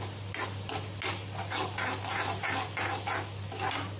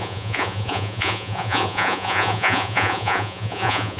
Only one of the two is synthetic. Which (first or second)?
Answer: second